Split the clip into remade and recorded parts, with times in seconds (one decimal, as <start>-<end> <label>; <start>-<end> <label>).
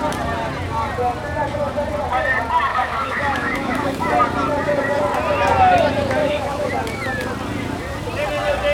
0.0-2.7 recorded; 2.7-4.1 remade; 4.1-6.2 recorded; 6.2-6.7 remade; 6.7-8.7 recorded